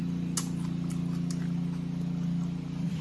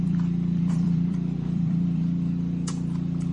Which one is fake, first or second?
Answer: second